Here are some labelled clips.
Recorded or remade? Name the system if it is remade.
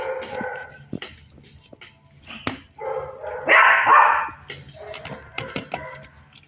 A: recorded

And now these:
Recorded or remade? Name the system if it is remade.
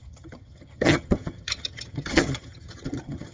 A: remade, vocoder, HiFi-GAN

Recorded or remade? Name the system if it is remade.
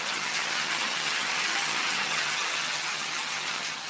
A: remade, vocoder, HiFi-GAN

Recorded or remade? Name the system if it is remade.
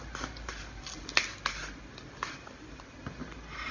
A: recorded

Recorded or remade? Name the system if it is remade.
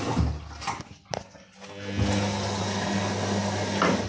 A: recorded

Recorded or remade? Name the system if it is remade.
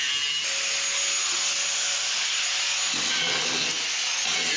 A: recorded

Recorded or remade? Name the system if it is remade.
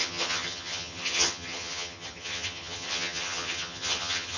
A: remade, vocoder, HiFi-GAN